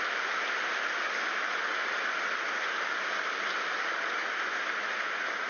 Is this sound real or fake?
real